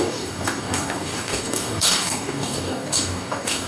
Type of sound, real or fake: fake